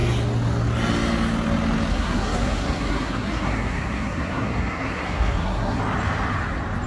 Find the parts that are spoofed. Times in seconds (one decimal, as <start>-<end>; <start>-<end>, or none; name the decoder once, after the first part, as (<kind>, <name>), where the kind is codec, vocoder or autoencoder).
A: 1.9-5.8 (codec, SNAC)